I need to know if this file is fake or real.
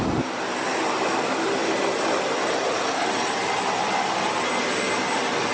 real